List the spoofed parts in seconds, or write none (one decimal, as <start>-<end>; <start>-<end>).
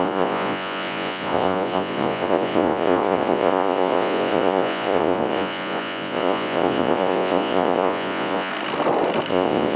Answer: 0.0-8.5; 9.3-9.8